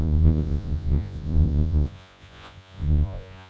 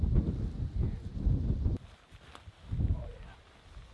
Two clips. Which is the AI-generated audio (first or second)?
first